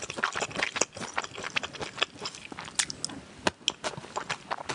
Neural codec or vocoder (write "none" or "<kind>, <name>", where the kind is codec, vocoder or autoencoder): none